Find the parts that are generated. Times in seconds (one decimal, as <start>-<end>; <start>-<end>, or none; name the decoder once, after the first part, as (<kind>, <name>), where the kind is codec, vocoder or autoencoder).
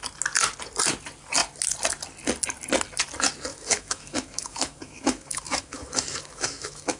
3.5-7.0 (autoencoder, DAC-VAE)